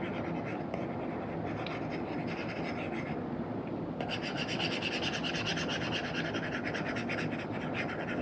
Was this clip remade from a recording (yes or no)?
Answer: no